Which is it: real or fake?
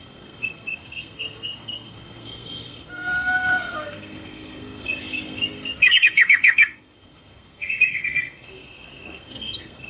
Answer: fake